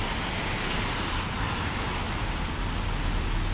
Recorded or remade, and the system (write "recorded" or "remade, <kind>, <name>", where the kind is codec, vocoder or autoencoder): recorded